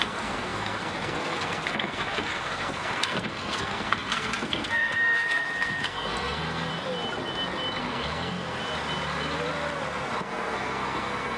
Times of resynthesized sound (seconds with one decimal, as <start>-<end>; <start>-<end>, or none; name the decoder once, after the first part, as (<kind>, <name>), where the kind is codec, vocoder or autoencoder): 0.0-6.7 (codec, SNAC); 7.8-8.6; 10.2-11.4